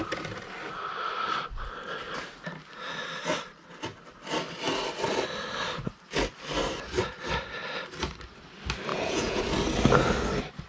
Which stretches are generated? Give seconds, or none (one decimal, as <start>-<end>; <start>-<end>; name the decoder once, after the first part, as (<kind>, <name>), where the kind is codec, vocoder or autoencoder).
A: 8.9-9.4 (vocoder, Vocos)